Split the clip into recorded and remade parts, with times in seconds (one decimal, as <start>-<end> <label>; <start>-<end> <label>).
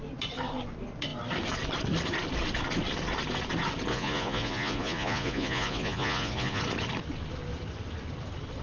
0.0-3.9 recorded; 3.9-6.6 remade; 6.6-8.6 recorded